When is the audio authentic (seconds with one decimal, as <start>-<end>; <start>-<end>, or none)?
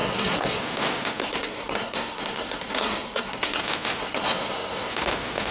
0.6-1.2; 3.6-4.0; 4.9-5.5